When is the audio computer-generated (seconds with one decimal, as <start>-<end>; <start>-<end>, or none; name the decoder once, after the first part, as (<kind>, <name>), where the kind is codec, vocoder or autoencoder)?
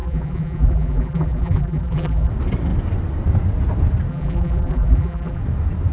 0.0-2.3 (vocoder, BigVGAN v2); 4.1-5.4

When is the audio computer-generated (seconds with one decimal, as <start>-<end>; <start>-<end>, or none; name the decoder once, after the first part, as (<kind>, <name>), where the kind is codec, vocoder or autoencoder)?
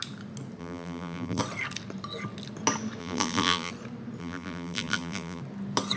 0.6-1.4 (vocoder, BigVGAN v2); 3.0-3.7; 4.2-5.4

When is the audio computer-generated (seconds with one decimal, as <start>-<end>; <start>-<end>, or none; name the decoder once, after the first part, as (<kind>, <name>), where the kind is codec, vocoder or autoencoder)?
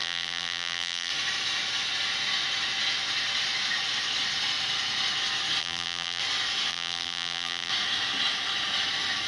0.0-1.1 (vocoder, BigVGAN v2); 5.6-6.2; 6.7-7.7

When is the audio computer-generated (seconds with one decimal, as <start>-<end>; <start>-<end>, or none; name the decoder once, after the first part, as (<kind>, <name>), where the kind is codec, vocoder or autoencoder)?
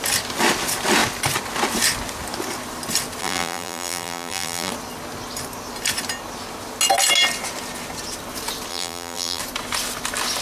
3.2-4.7 (vocoder, BigVGAN v2); 8.7-9.4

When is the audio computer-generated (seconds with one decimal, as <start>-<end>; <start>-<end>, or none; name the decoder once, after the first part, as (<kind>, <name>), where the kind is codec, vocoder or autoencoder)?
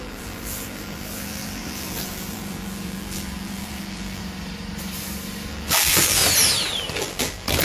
0.0-4.2 (vocoder, BigVGAN v2); 5.5-6.2; 6.9-7.6